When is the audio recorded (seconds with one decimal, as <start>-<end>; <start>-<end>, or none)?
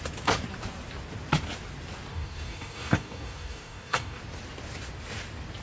0.0-2.1; 4.2-5.6